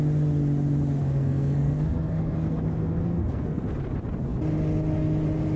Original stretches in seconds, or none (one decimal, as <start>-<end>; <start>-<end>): 0.0-1.0; 3.6-5.6